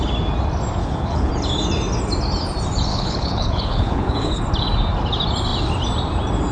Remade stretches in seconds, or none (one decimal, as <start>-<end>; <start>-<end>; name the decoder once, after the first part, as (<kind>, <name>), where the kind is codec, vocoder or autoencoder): 0.8-1.3 (codec, HILCodec); 2.9-4.4